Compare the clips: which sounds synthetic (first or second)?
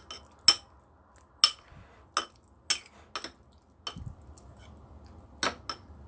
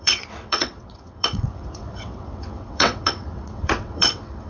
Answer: second